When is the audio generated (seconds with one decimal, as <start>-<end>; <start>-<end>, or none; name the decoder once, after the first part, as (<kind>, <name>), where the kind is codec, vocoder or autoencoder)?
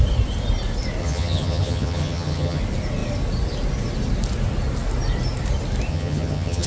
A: 1.0-2.6 (vocoder, HiFi-GAN); 5.9-6.7